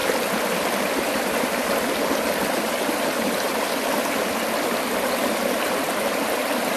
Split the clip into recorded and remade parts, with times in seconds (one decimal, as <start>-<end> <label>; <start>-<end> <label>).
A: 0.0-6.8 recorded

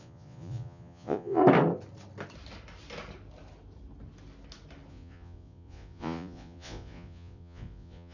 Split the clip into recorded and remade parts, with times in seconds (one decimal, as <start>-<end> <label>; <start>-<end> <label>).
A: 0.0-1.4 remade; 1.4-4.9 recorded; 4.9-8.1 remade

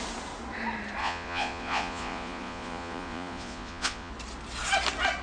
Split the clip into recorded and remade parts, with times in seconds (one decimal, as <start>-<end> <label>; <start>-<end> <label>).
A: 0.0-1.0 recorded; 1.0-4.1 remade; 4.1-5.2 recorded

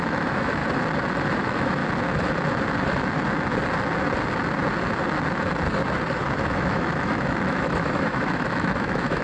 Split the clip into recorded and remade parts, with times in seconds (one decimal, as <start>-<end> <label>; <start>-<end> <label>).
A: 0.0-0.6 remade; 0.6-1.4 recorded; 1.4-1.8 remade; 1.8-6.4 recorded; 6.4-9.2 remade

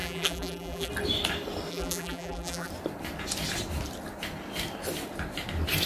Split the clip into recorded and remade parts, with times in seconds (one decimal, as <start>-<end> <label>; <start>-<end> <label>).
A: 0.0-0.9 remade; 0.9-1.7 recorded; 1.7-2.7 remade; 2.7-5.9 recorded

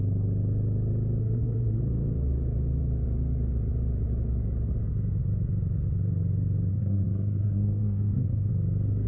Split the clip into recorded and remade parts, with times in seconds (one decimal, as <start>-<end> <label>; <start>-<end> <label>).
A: 0.0-1.2 recorded; 1.2-1.8 remade; 1.8-6.7 recorded; 6.7-8.5 remade; 8.5-9.1 recorded

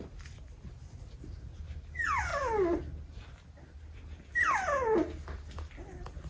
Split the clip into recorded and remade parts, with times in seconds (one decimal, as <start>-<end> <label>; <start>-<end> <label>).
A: 0.0-6.3 recorded